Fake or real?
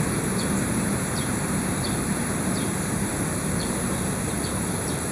fake